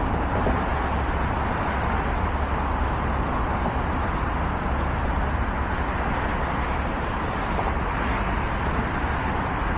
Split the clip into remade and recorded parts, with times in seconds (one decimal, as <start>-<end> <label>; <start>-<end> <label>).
0.0-9.8 recorded